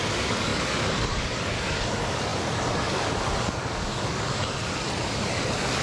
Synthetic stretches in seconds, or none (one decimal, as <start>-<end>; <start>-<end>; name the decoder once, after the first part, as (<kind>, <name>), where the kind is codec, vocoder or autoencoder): 0.0-5.8 (codec, DAC)